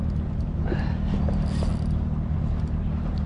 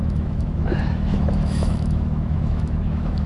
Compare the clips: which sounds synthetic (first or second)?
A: second